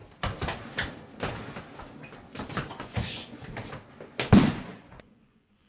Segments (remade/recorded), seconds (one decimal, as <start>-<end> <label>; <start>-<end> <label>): 0.0-2.7 recorded; 2.7-3.6 remade; 3.6-4.5 recorded; 4.5-5.7 remade